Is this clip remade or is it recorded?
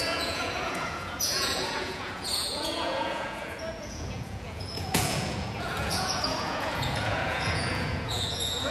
remade